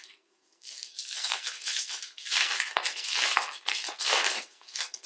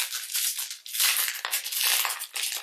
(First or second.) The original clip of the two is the second